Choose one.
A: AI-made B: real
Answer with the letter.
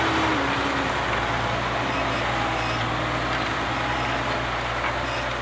B